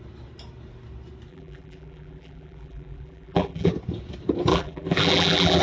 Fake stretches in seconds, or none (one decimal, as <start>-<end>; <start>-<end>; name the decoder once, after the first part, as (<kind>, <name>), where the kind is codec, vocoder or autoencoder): 1.3-3.7 (vocoder, BigVGAN v2); 4.5-5.6